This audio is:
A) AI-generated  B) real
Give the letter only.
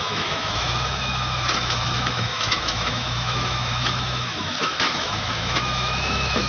A